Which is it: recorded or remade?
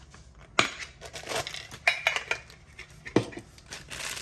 recorded